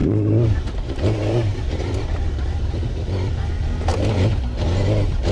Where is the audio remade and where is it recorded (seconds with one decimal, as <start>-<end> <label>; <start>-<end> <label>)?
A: 0.0-2.7 remade; 2.7-5.3 recorded